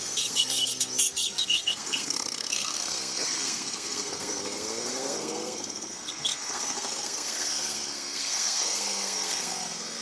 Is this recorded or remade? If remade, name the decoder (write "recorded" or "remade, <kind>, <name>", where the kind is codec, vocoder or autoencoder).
remade, codec, SNAC